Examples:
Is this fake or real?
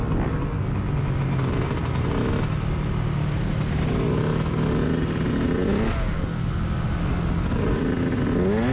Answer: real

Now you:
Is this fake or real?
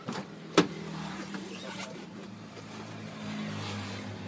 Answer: fake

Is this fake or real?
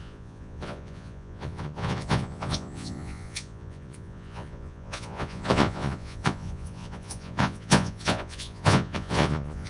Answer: fake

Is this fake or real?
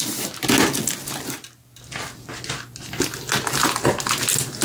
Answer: real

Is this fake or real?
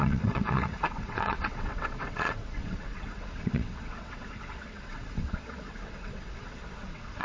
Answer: fake